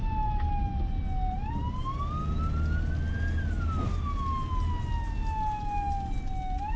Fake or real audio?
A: real